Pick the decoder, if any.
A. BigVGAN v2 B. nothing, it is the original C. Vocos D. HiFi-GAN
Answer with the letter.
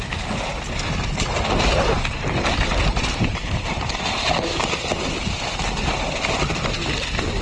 B